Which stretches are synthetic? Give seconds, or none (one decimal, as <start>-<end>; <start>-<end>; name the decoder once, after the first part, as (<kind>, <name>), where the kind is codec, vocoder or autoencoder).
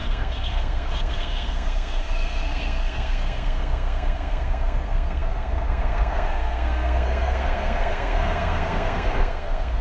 0.0-9.8 (codec, SNAC)